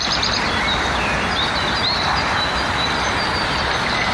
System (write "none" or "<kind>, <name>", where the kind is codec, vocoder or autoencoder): none